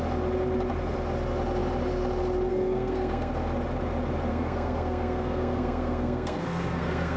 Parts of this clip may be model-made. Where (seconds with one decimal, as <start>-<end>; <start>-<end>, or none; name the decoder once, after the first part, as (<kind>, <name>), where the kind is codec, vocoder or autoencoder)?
2.5-3.3 (codec, SNAC); 4.3-7.2